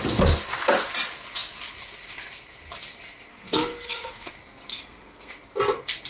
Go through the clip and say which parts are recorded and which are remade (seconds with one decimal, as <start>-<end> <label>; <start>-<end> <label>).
0.0-3.3 recorded; 3.3-4.3 remade; 4.3-4.7 recorded; 4.7-5.3 remade; 5.3-6.1 recorded